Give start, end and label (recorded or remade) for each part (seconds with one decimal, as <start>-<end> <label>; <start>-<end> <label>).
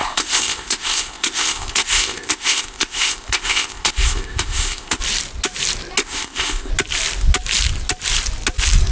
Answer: 0.0-5.0 remade; 5.0-6.0 recorded; 6.0-6.7 remade; 6.7-8.9 recorded